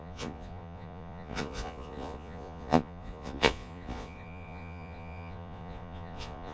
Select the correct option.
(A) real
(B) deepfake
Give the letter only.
B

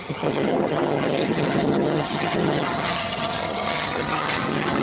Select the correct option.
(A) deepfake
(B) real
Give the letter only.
A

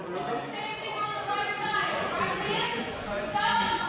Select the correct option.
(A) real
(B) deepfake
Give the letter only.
B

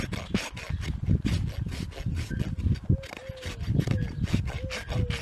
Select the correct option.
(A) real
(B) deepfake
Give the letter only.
A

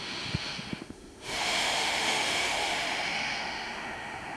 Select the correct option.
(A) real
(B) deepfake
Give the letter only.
B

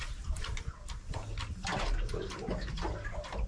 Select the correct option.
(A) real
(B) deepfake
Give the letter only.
A